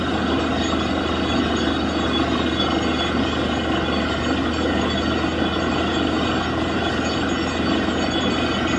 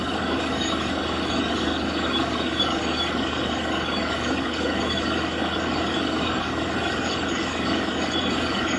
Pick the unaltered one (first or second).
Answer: first